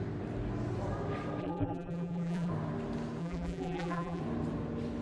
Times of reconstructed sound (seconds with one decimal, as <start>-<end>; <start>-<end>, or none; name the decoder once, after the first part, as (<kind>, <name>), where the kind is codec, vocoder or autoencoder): 1.4-2.5 (vocoder, BigVGAN v2); 3.2-4.2